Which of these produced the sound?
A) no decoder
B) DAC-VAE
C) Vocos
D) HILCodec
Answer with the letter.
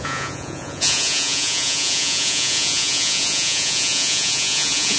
C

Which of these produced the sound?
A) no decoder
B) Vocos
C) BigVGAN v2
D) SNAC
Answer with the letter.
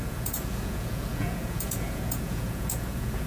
B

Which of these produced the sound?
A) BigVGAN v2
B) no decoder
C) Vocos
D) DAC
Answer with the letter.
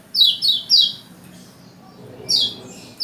B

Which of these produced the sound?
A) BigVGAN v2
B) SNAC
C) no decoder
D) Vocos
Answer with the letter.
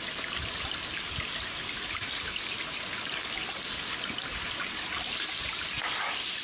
C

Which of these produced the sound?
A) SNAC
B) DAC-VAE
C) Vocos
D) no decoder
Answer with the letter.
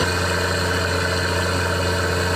D